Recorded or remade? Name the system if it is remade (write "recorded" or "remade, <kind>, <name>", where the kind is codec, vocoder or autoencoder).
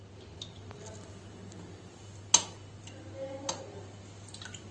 recorded